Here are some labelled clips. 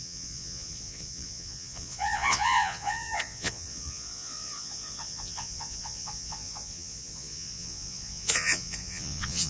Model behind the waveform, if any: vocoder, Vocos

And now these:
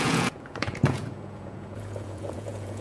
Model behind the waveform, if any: vocoder, Vocos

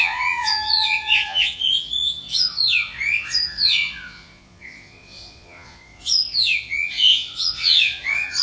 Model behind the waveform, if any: vocoder, Vocos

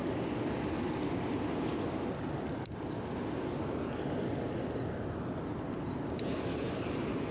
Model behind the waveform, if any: none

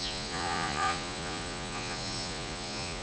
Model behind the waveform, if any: vocoder, Vocos